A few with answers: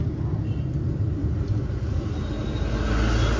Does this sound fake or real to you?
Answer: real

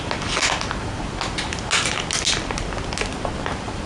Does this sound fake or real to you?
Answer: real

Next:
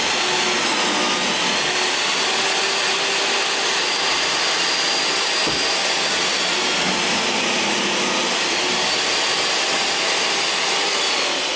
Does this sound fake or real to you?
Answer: real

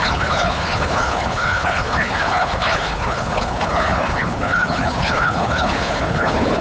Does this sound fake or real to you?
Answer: fake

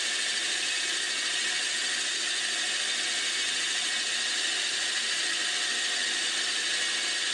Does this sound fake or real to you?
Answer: real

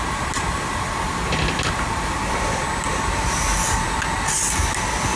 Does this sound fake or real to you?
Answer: real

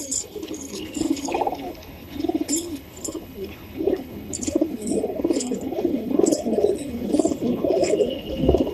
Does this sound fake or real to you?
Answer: fake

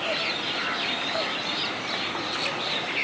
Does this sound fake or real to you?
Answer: real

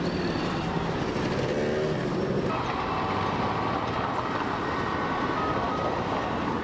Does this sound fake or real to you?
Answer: real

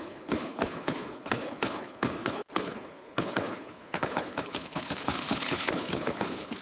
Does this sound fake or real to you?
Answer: fake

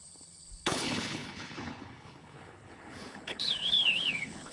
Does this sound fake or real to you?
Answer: fake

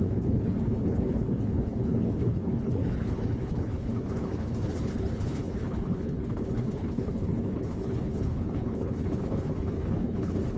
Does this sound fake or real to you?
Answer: fake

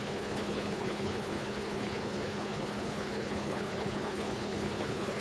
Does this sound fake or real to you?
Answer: fake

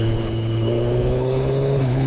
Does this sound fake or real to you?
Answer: fake